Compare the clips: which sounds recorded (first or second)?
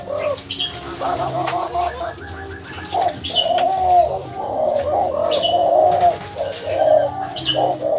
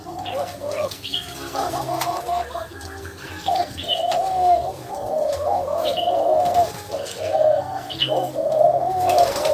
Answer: first